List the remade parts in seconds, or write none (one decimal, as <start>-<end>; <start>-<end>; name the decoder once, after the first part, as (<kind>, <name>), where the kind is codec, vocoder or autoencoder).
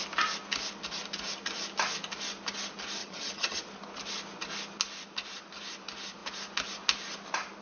3.0-3.6 (vocoder, HiFi-GAN)